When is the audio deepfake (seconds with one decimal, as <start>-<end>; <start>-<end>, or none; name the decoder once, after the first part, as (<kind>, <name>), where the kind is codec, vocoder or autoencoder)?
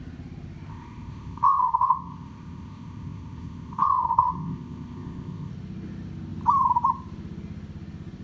0.7-5.5 (codec, ZipCodec)